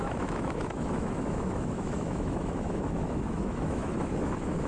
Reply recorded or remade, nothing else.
remade